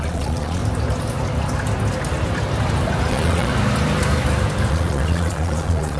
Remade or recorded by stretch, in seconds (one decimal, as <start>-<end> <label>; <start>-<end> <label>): 0.0-0.6 remade; 0.6-3.1 recorded; 3.1-3.5 remade; 3.5-4.7 recorded; 4.7-6.0 remade